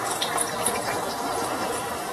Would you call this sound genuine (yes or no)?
no